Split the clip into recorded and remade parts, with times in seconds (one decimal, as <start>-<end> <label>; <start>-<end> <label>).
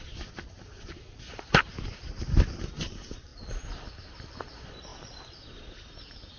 0.0-1.7 remade; 1.7-2.8 recorded; 2.8-6.4 remade